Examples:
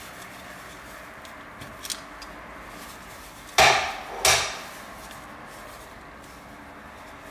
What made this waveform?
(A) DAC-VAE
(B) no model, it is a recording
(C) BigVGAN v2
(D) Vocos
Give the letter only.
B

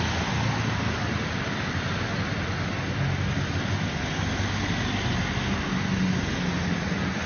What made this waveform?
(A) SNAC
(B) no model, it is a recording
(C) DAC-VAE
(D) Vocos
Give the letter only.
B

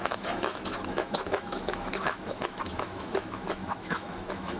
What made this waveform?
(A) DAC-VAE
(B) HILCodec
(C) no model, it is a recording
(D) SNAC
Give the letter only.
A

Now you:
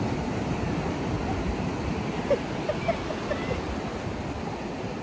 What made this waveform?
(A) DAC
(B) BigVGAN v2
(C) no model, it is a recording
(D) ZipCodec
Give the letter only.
C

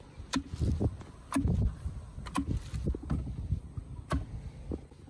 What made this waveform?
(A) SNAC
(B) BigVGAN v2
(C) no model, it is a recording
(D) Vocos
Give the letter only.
C